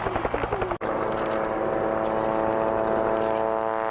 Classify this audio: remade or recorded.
recorded